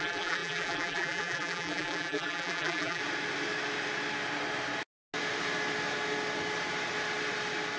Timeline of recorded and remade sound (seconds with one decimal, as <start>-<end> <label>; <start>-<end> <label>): 0.0-3.0 remade; 3.0-7.8 recorded